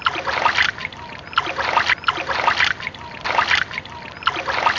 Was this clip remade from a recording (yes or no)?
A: no